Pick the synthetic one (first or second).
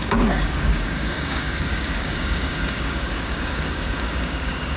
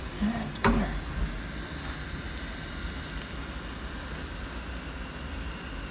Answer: first